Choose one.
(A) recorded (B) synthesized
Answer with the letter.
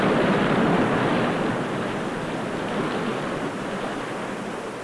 A